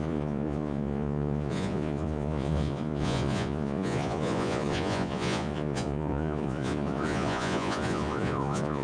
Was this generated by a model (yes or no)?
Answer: yes